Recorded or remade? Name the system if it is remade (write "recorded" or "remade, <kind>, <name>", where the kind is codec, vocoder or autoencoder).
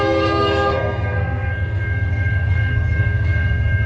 remade, codec, SNAC